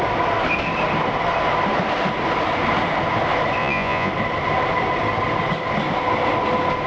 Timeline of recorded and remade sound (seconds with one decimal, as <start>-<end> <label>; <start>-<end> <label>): 0.0-3.6 recorded; 3.6-4.1 remade; 4.1-6.9 recorded